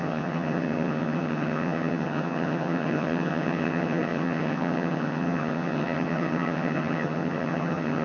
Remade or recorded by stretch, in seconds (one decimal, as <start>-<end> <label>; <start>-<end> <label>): 0.0-8.0 remade